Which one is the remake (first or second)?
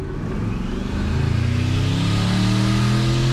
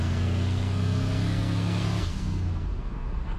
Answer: second